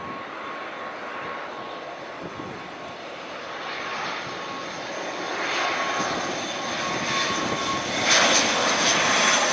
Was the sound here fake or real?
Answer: real